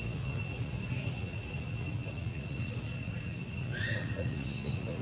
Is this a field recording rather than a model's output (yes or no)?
no